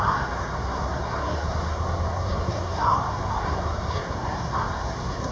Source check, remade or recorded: remade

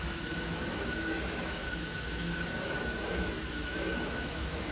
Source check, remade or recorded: remade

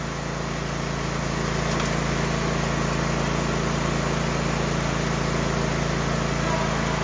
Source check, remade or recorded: recorded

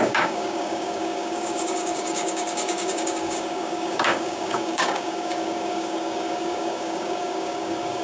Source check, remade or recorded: remade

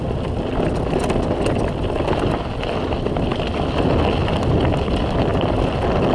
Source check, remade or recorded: recorded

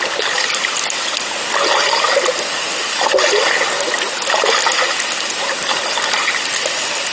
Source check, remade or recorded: recorded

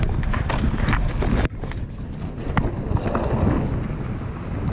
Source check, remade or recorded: recorded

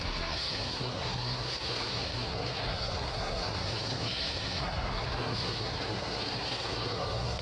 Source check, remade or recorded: remade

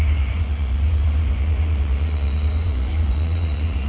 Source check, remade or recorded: remade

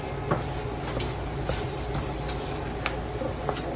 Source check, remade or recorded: recorded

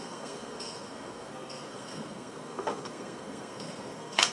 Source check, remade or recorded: remade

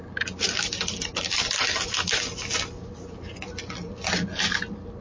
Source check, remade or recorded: recorded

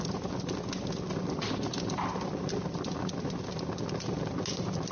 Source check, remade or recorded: recorded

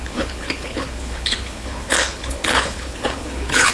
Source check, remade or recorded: remade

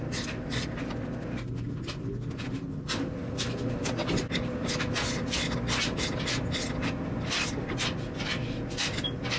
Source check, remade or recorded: recorded